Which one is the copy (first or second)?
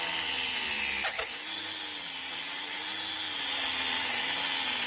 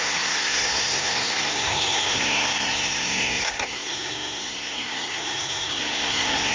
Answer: second